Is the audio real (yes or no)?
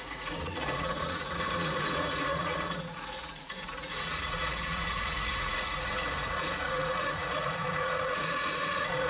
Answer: no